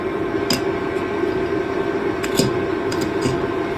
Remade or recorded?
recorded